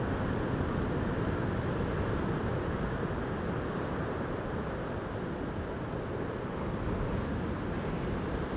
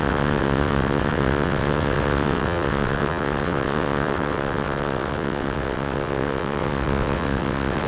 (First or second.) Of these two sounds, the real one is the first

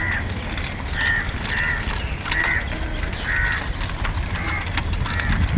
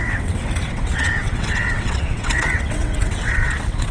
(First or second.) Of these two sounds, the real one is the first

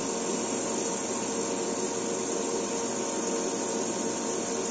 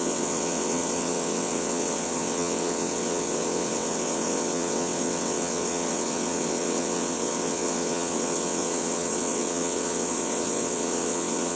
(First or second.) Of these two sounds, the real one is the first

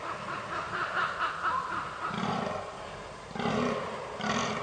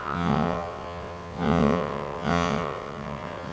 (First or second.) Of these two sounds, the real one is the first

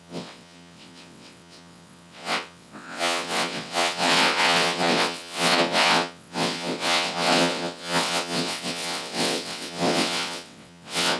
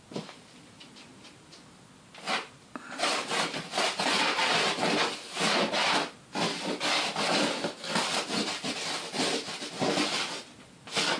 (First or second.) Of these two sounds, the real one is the second